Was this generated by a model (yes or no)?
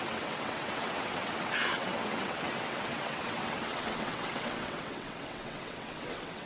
yes